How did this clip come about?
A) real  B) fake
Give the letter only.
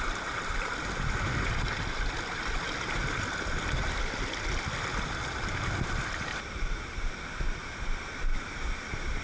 B